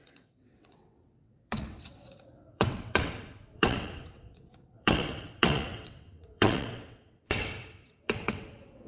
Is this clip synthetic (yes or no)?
yes